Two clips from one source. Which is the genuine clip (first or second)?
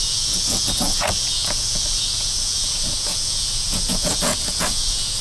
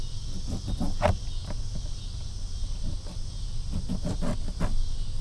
second